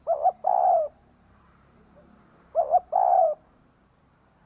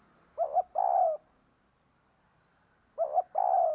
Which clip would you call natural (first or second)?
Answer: second